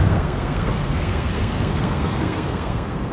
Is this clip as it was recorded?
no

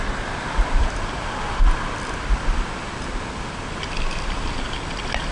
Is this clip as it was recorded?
yes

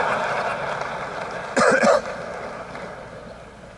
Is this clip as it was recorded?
yes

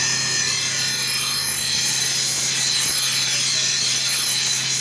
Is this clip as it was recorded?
yes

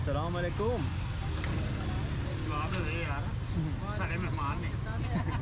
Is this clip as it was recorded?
yes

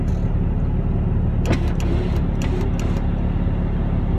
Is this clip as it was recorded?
yes